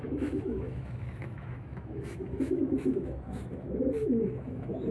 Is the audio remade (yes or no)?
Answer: yes